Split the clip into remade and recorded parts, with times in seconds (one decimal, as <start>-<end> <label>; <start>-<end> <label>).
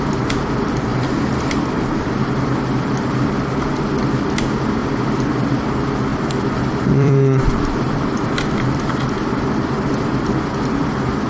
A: 0.0-0.9 recorded; 0.9-3.3 remade; 3.3-4.8 recorded; 4.8-5.6 remade; 5.6-6.1 recorded; 6.1-10.3 remade; 10.3-11.3 recorded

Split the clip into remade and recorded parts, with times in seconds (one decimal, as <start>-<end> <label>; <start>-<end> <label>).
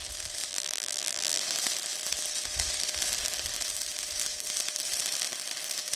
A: 0.0-0.5 recorded; 0.5-1.4 remade; 1.4-6.0 recorded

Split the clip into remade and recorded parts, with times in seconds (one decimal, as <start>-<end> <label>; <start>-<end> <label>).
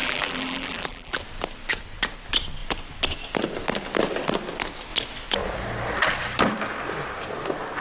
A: 0.0-1.2 remade; 1.2-7.8 recorded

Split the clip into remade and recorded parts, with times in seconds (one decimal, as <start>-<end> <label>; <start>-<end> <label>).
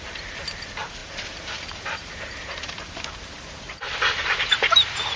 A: 0.0-5.2 remade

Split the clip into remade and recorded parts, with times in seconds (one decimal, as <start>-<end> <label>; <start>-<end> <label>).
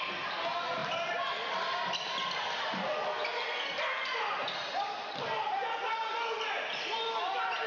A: 0.0-7.7 recorded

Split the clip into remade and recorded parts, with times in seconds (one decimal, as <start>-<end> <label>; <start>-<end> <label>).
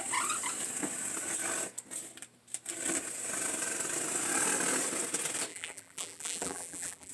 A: 0.0-5.5 recorded; 5.5-7.1 remade